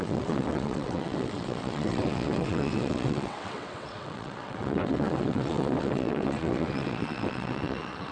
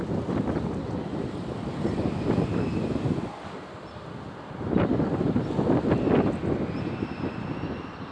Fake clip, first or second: first